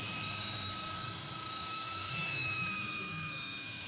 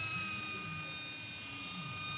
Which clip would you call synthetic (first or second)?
first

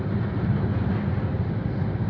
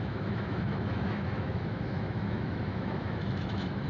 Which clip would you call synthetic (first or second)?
second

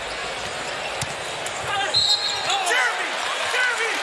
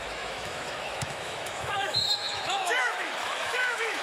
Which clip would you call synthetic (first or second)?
second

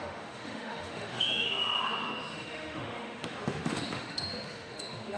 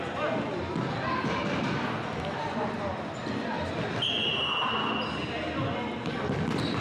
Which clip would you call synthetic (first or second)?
first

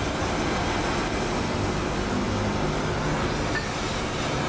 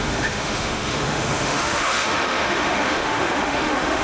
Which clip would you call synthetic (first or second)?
second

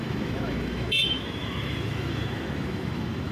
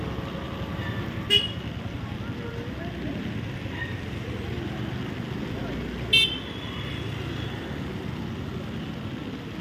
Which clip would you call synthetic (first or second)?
first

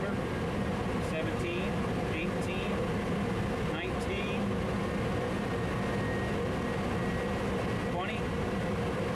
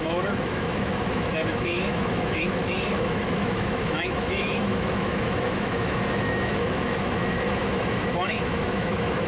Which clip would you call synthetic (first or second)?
second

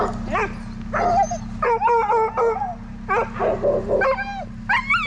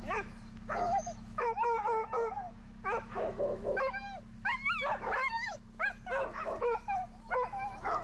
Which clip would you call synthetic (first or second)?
second